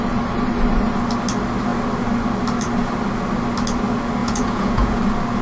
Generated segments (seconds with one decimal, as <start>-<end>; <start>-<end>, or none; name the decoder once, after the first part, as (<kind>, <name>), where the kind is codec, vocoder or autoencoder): 4.2-5.0 (vocoder, Vocos)